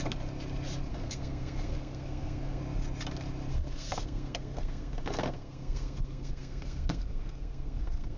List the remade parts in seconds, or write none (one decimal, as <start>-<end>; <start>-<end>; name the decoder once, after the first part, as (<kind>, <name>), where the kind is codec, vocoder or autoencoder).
0.9-2.6 (codec, SNAC); 3.5-8.2